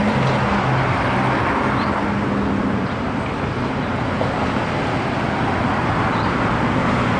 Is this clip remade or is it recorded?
recorded